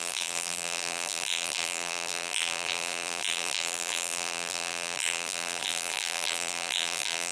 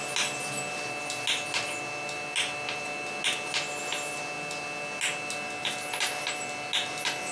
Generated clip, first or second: first